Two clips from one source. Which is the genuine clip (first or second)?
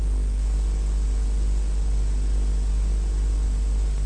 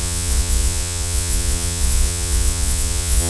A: first